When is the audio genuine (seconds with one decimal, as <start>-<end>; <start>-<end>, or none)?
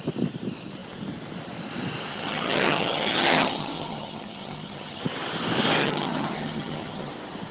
0.0-2.1; 5.0-5.8; 7.1-7.5